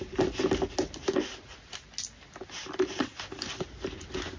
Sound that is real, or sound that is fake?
real